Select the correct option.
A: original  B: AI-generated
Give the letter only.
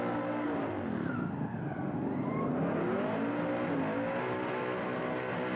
A